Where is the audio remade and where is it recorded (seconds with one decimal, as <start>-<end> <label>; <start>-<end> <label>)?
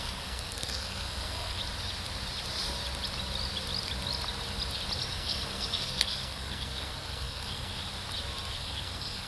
0.0-1.6 remade; 1.6-5.1 recorded; 5.1-7.8 remade; 7.8-8.5 recorded; 8.5-9.3 remade